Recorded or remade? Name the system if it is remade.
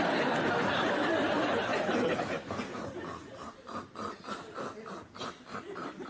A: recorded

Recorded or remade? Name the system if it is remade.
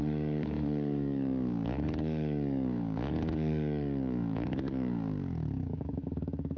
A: remade, codec, DAC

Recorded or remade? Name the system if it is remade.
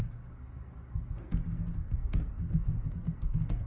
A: remade, codec, SNAC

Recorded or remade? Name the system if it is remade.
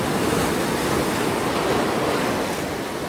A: recorded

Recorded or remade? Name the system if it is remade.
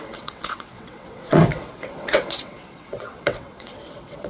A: remade, vocoder, WaveNeXt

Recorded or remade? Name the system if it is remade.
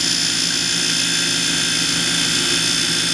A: recorded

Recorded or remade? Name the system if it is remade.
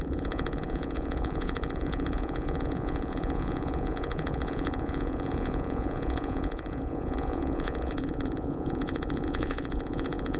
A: remade, vocoder, Vocos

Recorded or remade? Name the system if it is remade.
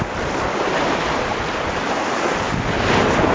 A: recorded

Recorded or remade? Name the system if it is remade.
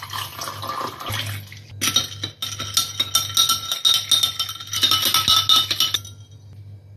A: recorded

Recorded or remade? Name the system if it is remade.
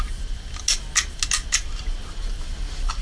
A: recorded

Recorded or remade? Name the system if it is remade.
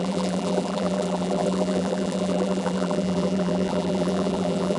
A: remade, vocoder, BigVGAN v2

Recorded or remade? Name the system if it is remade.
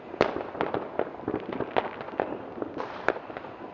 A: recorded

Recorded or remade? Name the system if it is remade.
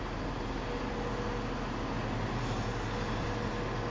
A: recorded